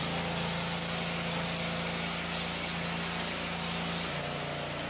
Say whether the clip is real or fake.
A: real